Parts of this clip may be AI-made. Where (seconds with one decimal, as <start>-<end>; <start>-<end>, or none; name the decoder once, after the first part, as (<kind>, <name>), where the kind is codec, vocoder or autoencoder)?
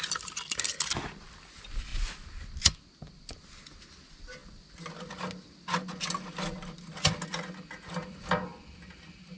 none